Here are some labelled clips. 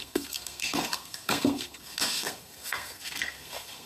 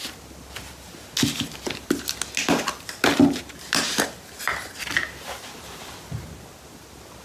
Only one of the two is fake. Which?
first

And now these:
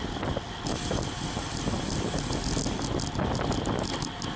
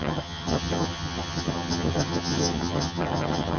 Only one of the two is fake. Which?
second